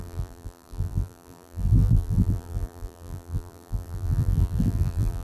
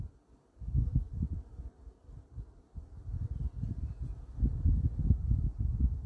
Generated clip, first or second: first